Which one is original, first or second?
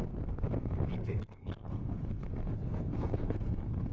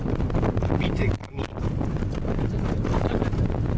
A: second